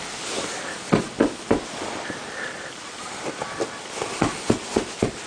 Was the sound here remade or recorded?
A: recorded